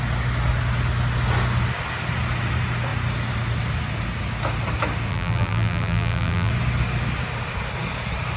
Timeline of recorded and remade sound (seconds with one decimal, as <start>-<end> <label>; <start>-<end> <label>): 0.0-5.1 recorded; 5.1-6.5 remade; 6.5-8.4 recorded